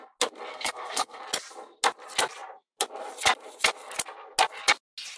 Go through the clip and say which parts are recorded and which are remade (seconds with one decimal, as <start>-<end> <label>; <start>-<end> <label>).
0.0-0.5 recorded; 0.5-1.2 remade; 1.2-5.2 recorded